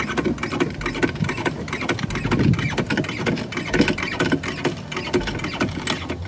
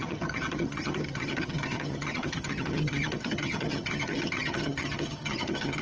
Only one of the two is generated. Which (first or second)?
second